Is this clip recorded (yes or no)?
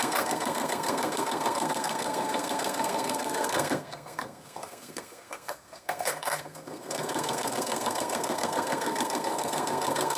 no